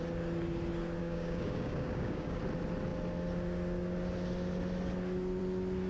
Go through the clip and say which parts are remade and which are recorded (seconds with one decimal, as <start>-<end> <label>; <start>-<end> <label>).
0.0-1.0 recorded; 1.0-2.4 remade; 2.4-5.9 recorded